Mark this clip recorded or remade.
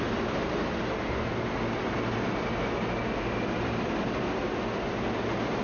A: recorded